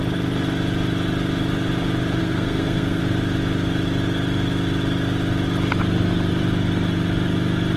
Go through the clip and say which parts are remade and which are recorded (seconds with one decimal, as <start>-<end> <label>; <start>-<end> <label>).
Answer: 0.0-2.2 recorded; 2.2-3.0 remade; 3.0-7.8 recorded